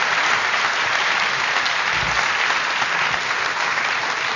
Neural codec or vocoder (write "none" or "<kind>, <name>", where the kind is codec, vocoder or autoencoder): none